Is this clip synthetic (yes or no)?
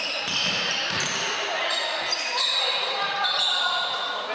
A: yes